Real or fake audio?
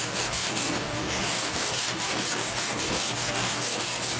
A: fake